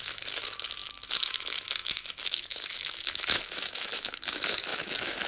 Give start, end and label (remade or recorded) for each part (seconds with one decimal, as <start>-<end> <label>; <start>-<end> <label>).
0.0-5.3 remade

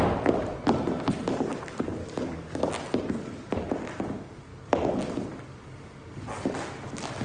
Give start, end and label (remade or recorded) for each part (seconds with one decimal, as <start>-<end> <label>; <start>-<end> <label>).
0.0-2.0 recorded; 2.0-2.7 remade; 2.7-7.2 recorded

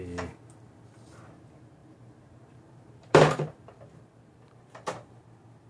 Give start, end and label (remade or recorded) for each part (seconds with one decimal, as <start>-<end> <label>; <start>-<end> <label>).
0.0-1.8 recorded; 1.8-5.2 remade; 5.2-5.7 recorded

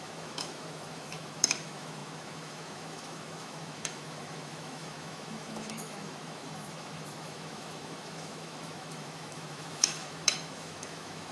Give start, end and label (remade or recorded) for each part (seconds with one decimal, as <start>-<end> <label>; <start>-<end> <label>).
0.0-11.3 remade

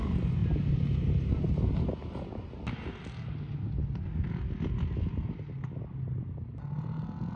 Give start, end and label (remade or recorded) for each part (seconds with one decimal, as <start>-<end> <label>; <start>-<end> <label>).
0.0-7.4 recorded

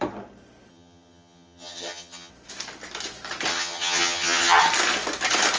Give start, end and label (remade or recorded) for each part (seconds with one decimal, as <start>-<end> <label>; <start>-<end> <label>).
0.0-0.7 recorded; 0.7-2.3 remade; 2.3-3.5 recorded; 3.5-4.6 remade; 4.6-5.6 recorded